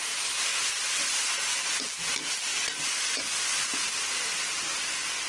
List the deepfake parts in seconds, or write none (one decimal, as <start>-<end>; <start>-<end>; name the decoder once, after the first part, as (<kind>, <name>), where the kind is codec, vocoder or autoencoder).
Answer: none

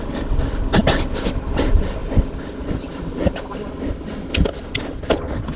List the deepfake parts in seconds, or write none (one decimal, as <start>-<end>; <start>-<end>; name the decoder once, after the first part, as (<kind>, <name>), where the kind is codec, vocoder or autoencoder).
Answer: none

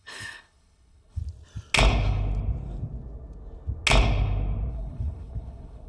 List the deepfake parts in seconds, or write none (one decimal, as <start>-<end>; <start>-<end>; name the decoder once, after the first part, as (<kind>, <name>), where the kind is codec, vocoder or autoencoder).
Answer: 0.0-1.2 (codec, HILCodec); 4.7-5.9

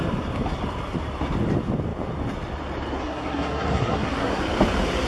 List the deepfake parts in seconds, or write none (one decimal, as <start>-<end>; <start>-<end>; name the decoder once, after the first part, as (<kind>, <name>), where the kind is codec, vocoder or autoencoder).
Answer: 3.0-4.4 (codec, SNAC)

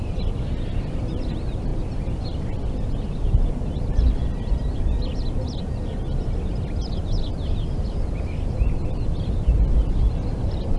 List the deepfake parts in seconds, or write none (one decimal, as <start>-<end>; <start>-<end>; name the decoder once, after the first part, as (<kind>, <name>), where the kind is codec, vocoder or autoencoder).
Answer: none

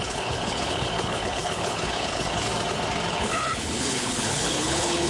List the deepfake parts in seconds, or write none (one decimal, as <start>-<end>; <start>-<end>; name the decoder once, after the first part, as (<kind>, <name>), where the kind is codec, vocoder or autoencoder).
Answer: 0.0-2.5 (codec, HILCodec); 3.1-5.1

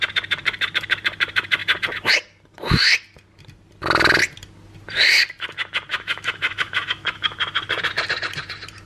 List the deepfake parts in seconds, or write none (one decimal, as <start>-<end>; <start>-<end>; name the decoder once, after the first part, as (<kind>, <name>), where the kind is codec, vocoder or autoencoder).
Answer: 5.9-7.4 (autoencoder, DAC-VAE)